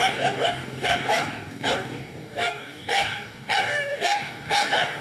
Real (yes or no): no